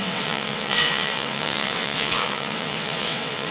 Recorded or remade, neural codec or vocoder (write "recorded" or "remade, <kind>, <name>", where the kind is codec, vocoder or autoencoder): remade, vocoder, WaveNeXt